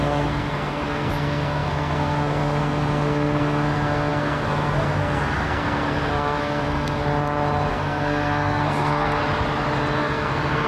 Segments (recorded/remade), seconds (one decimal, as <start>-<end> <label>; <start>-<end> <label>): 0.0-7.0 remade; 7.0-7.7 recorded; 7.7-9.2 remade; 9.2-10.0 recorded; 10.0-10.7 remade